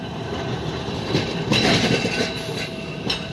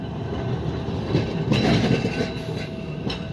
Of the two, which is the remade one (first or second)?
first